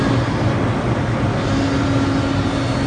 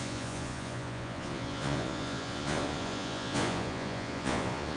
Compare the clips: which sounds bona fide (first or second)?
first